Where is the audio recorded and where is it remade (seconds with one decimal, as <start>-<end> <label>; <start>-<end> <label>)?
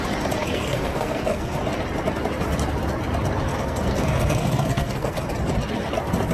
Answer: 0.0-0.4 recorded; 0.4-1.6 remade; 1.6-3.5 recorded; 3.5-5.2 remade; 5.2-6.3 recorded